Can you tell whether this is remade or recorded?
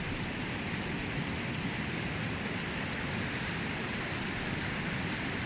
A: remade